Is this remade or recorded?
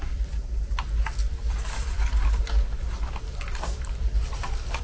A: remade